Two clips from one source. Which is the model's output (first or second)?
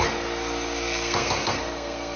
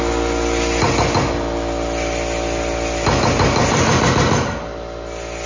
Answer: first